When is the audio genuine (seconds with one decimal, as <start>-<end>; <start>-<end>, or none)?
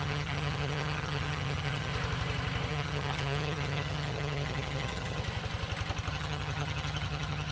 1.9-2.7; 5.2-6.1